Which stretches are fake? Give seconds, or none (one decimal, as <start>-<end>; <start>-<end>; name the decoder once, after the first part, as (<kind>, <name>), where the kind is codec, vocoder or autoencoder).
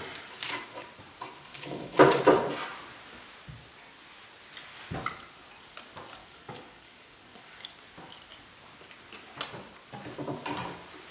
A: 1.5-2.2 (codec, DAC); 6.2-7.7